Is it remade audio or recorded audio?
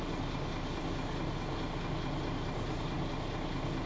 recorded